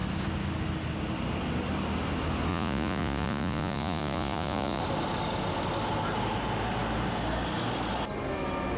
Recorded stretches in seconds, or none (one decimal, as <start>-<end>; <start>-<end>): 0.0-2.5; 4.8-8.8

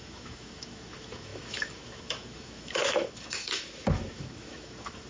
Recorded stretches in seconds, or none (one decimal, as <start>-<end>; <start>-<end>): none

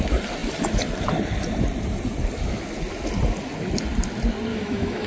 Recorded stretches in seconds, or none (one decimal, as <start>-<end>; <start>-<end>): 0.0-4.5